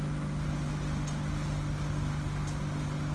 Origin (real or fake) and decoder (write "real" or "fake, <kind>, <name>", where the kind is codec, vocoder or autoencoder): real